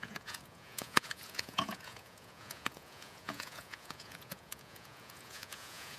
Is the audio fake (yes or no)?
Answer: yes